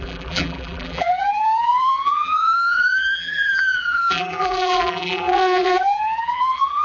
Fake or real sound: fake